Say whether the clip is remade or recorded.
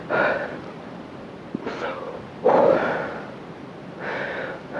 remade